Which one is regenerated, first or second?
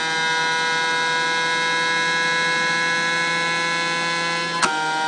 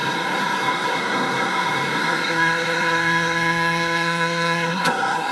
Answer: second